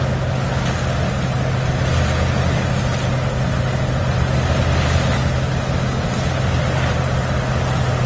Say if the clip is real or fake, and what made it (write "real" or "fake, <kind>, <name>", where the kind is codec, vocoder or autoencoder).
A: real